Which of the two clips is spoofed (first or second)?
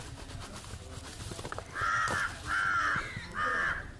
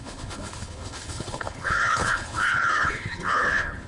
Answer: second